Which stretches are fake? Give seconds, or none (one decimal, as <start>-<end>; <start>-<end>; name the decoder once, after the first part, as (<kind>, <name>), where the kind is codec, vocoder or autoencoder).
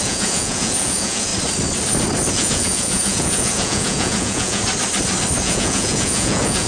0.0-1.3 (vocoder, Vocos); 2.3-4.6; 5.4-6.7